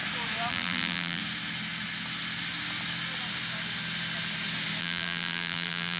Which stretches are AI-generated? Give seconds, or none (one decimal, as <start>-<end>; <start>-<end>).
0.5-1.2; 4.8-6.0